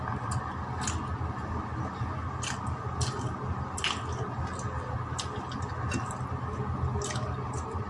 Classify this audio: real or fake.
real